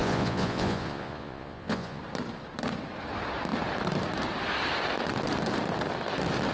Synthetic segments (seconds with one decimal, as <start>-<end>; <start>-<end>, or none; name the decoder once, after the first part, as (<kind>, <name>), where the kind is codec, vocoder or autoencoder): 0.0-2.0 (vocoder, Vocos)